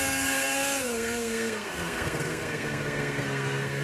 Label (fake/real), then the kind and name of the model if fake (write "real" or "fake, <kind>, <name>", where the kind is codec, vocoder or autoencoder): fake, codec, SNAC